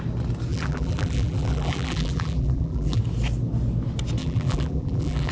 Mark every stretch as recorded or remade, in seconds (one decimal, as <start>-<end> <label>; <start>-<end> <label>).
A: 0.0-0.5 recorded; 0.5-3.0 remade; 3.0-4.2 recorded; 4.2-5.3 remade